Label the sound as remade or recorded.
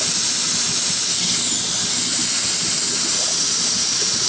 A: recorded